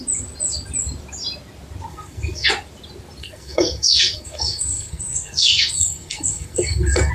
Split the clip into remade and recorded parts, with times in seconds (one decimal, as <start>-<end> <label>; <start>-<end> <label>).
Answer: 0.0-1.9 recorded; 1.9-2.5 remade; 2.5-3.2 recorded; 3.2-7.1 remade